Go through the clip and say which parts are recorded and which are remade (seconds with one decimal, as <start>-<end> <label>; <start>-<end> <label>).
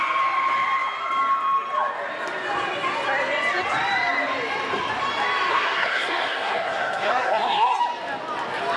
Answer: 0.0-5.5 recorded; 5.5-7.8 remade; 7.8-8.8 recorded